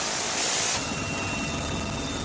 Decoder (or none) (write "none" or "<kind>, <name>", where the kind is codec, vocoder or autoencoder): none